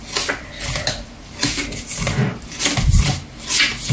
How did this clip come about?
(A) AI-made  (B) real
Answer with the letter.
B